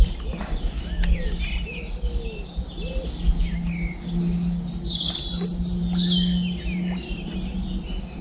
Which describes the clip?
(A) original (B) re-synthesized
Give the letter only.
A